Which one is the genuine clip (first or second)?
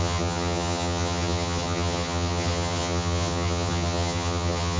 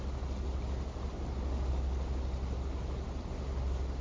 second